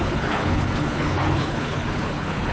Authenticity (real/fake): fake